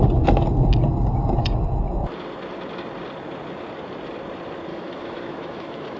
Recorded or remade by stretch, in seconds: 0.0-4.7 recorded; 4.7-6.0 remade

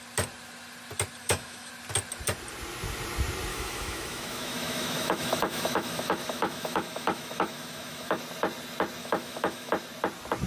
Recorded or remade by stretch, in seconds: 0.0-1.2 recorded; 1.2-1.7 remade; 1.7-3.5 recorded; 3.5-8.2 remade; 8.2-9.0 recorded; 9.0-9.7 remade; 9.7-10.5 recorded

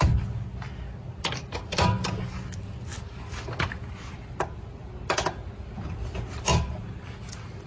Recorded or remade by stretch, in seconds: 0.0-7.7 recorded

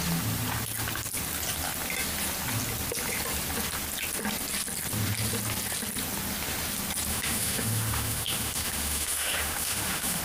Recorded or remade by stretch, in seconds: 0.0-7.1 recorded; 7.1-10.2 remade

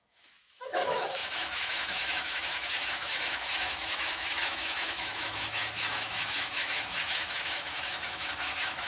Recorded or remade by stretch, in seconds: 0.0-8.9 remade

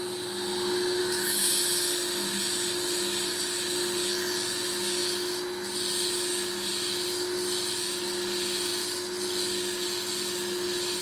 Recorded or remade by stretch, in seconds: 0.0-1.0 recorded; 1.0-1.5 remade; 1.5-11.0 recorded

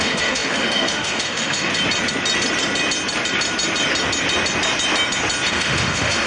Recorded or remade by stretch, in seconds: 0.0-1.7 remade; 1.7-5.5 recorded; 5.5-6.3 remade

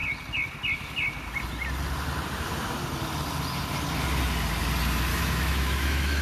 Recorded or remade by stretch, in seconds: 0.0-5.1 recorded; 5.1-6.2 remade